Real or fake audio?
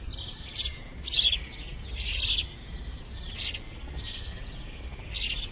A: real